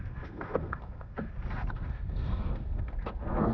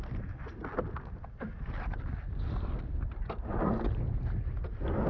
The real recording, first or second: second